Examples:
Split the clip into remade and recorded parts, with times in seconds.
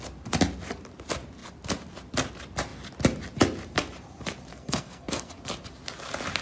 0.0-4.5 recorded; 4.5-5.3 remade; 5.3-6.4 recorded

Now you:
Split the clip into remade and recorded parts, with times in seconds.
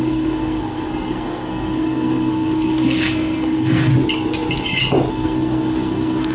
0.0-3.9 remade; 3.9-5.1 recorded; 5.1-6.3 remade